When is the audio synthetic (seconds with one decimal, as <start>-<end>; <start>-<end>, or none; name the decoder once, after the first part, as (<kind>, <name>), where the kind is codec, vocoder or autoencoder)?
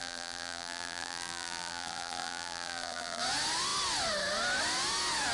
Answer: 0.0-3.2 (vocoder, BigVGAN v2)